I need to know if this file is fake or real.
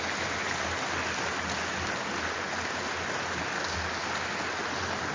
real